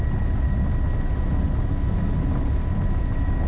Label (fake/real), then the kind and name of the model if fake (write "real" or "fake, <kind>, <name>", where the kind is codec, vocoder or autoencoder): real